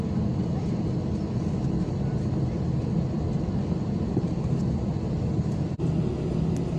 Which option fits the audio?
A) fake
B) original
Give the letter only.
B